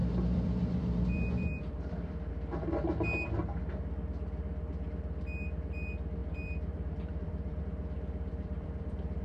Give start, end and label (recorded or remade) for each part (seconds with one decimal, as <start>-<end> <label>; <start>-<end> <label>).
0.0-2.3 remade; 2.3-6.2 recorded; 6.2-7.6 remade; 7.6-8.3 recorded; 8.3-9.2 remade